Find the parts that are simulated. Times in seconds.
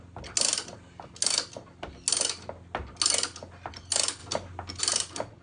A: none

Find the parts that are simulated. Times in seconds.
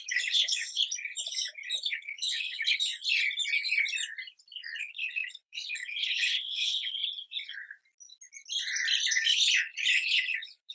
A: 0.0-0.8; 1.8-2.9; 4.8-7.0; 9.1-10.7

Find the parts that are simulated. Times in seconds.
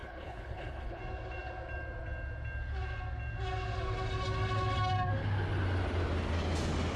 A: 0.0-1.0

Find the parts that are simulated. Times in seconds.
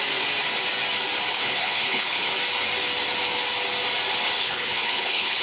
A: 1.3-2.3; 4.4-5.4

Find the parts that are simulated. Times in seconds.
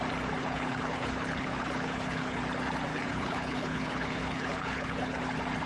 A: 0.4-2.4; 2.9-5.2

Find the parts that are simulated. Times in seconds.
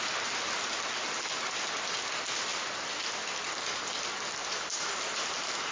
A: none